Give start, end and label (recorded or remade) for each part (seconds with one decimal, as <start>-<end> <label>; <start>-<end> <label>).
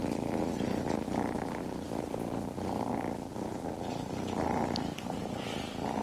0.0-6.0 recorded